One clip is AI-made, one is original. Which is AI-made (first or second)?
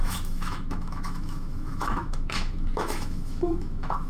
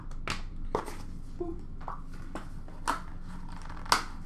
first